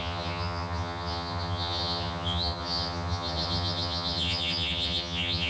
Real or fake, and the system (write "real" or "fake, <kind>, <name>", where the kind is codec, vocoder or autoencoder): fake, vocoder, HiFi-GAN